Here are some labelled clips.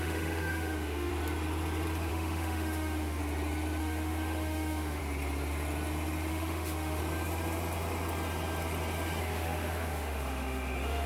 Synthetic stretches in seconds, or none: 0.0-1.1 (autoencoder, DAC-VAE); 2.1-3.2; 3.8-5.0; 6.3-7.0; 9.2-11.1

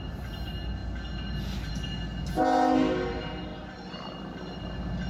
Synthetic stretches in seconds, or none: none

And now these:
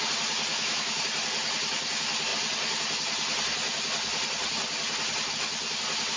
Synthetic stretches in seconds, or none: 0.5-1.0 (autoencoder, DAC-VAE)